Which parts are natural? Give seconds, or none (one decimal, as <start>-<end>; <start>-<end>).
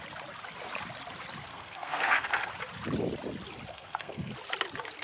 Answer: 0.0-1.5; 2.5-3.7; 4.3-5.0